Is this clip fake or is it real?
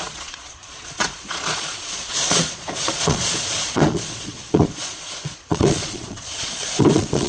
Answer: fake